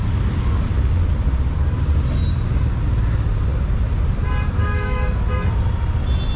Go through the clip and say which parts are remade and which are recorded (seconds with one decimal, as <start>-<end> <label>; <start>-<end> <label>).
0.0-4.6 recorded; 4.6-5.2 remade; 5.2-6.4 recorded

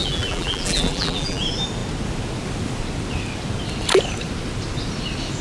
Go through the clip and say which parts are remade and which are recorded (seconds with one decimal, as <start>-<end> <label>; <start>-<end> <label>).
0.0-1.4 remade; 1.4-5.4 recorded

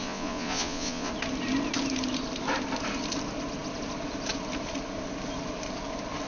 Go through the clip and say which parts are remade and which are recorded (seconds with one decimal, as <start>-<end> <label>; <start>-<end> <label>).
0.0-1.1 remade; 1.1-6.3 recorded

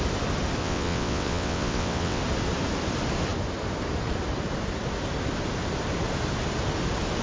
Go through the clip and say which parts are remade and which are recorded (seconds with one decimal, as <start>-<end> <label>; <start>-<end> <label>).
0.0-0.6 recorded; 0.6-2.2 remade; 2.2-7.2 recorded

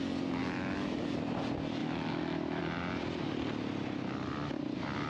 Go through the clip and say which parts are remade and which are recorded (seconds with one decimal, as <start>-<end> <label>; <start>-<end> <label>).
0.0-0.4 recorded; 0.4-1.0 remade; 1.0-1.8 recorded; 1.8-2.6 remade; 2.6-5.1 recorded